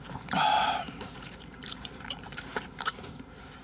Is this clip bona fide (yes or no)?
no